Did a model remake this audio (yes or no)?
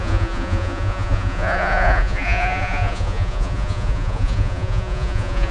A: yes